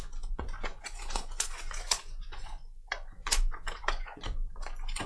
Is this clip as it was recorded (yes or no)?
no